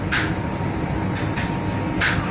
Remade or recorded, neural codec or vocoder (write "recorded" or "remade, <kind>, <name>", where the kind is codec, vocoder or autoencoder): recorded